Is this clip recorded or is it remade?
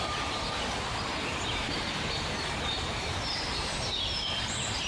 remade